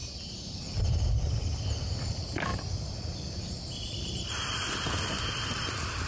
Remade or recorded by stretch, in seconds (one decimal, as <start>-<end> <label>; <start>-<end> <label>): 0.0-1.2 remade; 1.2-2.5 recorded; 2.5-5.1 remade; 5.1-6.1 recorded